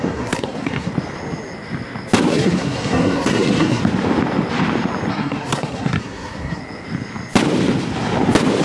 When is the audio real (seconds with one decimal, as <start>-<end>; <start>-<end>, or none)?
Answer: 0.9-2.3; 3.8-5.1; 6.6-8.6